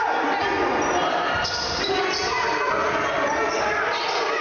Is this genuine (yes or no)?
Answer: yes